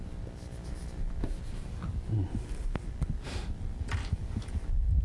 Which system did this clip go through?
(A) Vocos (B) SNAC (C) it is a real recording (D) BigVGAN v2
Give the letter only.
C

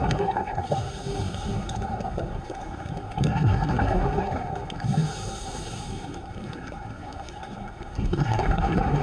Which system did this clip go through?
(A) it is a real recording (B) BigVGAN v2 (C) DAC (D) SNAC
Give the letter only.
D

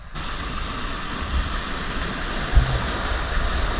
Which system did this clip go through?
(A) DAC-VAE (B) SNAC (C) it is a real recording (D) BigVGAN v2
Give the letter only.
C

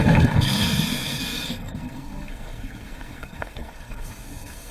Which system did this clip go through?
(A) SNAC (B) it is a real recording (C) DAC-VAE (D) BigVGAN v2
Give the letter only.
A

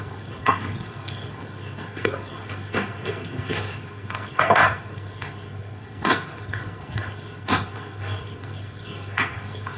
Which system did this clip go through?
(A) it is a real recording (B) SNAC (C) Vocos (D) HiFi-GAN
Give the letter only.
B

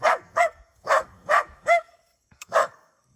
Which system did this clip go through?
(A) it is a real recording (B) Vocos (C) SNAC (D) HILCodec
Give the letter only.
C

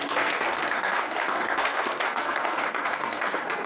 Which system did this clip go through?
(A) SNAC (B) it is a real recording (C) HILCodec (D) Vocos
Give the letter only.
A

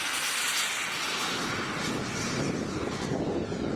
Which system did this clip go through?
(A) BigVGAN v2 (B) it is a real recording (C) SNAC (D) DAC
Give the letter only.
B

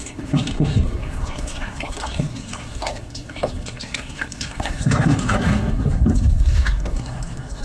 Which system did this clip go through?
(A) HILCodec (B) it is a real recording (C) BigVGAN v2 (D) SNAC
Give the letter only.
D